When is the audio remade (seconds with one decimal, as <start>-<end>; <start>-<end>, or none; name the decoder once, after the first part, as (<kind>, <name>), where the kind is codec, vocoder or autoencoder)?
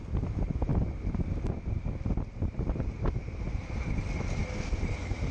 none